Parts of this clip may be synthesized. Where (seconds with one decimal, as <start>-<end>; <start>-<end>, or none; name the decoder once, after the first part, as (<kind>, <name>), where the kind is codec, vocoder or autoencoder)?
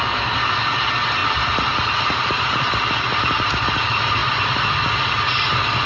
1.2-2.8 (vocoder, BigVGAN v2); 4.2-4.8